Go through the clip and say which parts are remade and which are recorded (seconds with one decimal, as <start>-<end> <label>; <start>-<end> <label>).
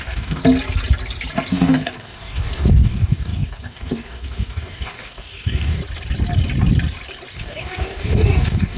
0.0-0.4 remade; 0.4-1.5 recorded; 1.5-5.8 remade; 5.8-7.3 recorded; 7.3-8.8 remade